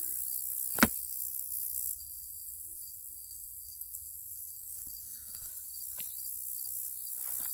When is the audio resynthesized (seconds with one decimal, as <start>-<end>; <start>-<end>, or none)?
1.0-5.5